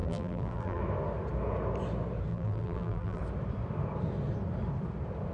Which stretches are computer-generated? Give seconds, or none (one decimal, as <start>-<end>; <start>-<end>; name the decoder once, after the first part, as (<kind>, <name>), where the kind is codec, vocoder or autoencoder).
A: 0.0-0.8 (vocoder, BigVGAN v2); 2.3-3.2